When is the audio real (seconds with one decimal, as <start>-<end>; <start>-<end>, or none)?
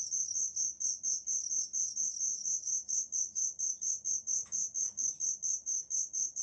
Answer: 0.0-2.3